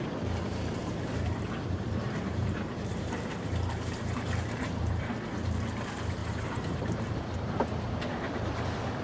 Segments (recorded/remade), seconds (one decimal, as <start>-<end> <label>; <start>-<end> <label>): 0.0-0.8 recorded; 0.8-5.1 remade; 5.1-6.2 recorded; 6.2-7.1 remade; 7.1-9.0 recorded